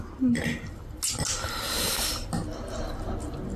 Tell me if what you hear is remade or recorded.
recorded